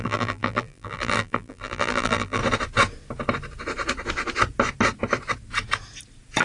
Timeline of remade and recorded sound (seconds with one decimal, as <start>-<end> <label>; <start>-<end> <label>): 0.0-2.4 remade; 2.4-6.4 recorded